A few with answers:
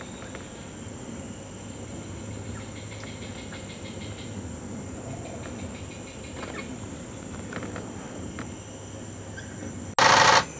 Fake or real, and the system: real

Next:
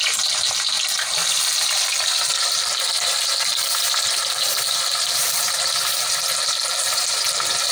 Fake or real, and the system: fake, vocoder, BigVGAN v2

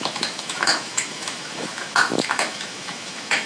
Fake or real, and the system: fake, autoencoder, DAC-VAE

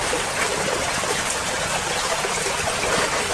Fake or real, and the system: real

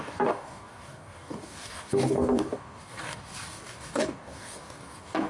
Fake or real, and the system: fake, codec, DAC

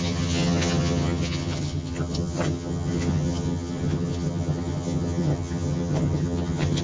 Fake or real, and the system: fake, vocoder, HiFi-GAN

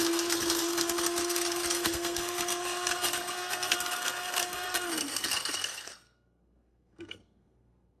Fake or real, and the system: fake, codec, SNAC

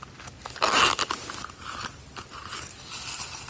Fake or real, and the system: real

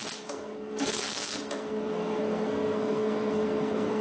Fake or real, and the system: fake, codec, SNAC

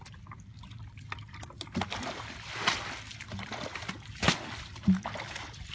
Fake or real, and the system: real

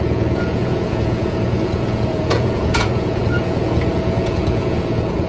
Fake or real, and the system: fake, vocoder, Vocos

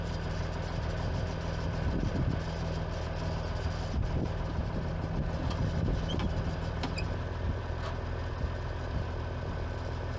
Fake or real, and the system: real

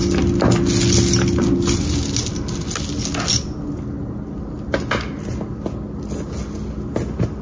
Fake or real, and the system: real